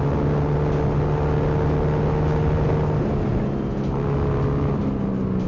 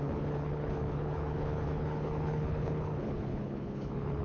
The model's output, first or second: second